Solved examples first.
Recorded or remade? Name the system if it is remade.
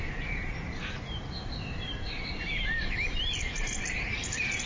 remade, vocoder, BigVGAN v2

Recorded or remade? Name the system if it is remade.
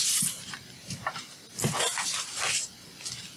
recorded